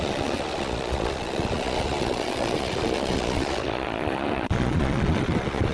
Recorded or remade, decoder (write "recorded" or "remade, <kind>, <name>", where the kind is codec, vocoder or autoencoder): remade, vocoder, Vocos